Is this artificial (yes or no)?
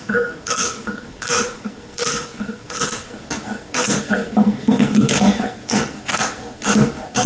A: yes